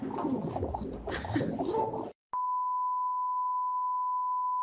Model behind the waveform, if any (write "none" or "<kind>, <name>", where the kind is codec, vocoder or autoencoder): none